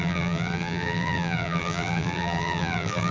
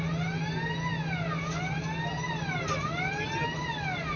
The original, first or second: second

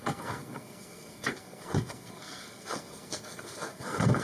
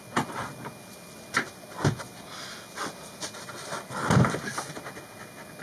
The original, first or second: second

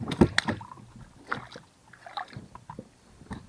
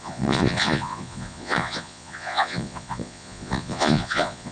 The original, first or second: first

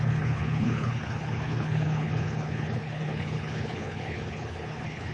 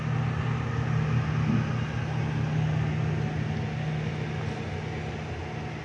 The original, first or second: second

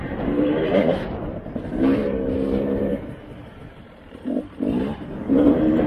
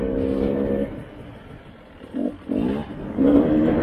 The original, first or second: second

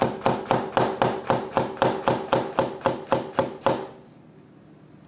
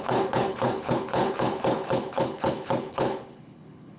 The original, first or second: first